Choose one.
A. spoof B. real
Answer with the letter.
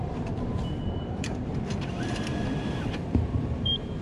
A